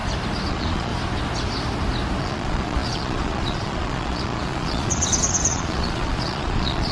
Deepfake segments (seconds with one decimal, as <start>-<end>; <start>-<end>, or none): 0.5-0.9; 2.2-6.9

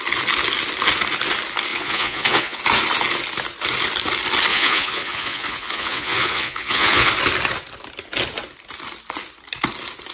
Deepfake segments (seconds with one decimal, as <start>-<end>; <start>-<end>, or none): 1.7-2.6; 4.5-7.1

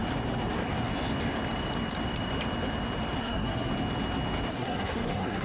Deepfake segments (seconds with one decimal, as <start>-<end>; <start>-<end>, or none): 3.2-3.7; 4.5-5.4

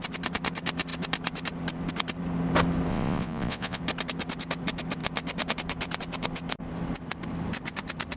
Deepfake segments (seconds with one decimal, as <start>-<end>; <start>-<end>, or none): 2.9-3.8

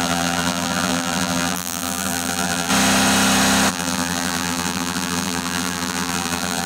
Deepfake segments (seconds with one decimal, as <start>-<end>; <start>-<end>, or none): 0.0-2.7; 3.7-6.7

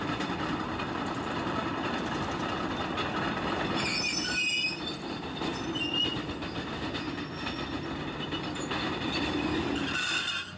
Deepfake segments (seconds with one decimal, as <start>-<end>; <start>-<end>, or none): none